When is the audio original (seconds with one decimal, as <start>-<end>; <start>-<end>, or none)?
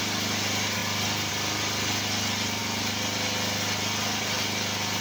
0.0-5.0